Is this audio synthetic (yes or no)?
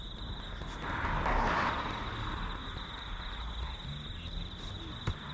no